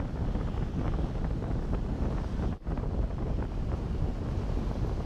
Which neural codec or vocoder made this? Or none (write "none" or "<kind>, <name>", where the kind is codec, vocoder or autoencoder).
none